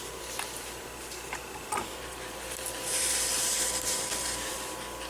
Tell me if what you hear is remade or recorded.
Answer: remade